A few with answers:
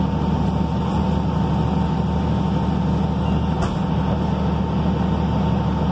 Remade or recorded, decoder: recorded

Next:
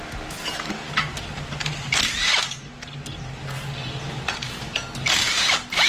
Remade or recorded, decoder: recorded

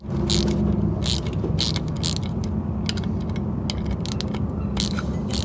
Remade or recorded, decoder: recorded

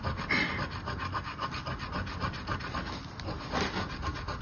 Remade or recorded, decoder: recorded